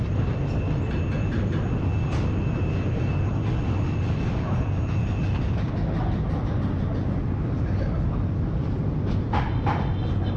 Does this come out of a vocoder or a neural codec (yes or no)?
no